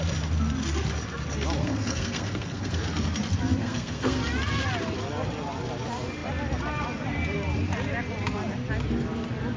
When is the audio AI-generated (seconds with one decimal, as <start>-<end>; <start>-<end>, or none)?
1.6-2.8; 3.6-4.2